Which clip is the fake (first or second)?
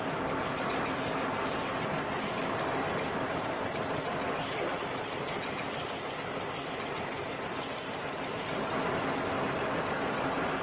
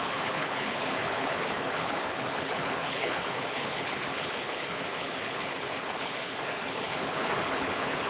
second